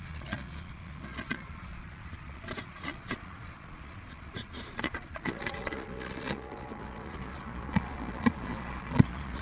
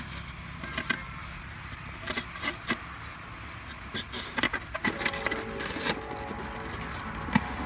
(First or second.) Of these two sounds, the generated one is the first